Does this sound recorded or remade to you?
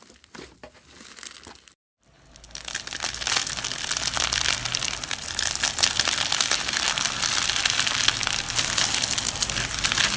recorded